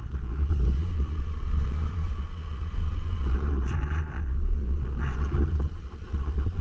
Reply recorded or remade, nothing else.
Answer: remade